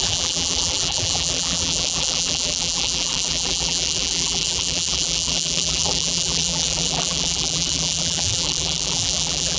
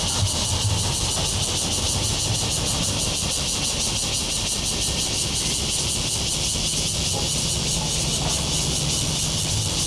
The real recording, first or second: second